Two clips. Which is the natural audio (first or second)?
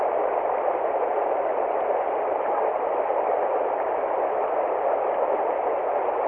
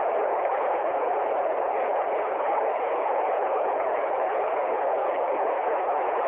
first